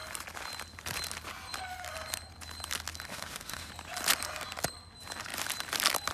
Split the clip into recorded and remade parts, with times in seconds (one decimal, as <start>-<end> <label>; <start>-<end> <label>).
0.0-3.1 recorded; 3.1-3.7 remade; 3.7-6.1 recorded